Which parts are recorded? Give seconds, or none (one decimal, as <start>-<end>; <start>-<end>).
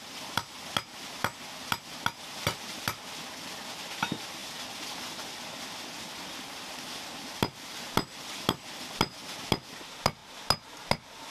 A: 0.0-11.3